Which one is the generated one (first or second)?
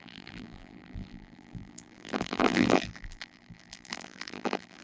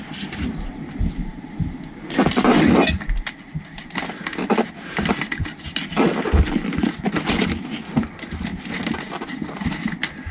first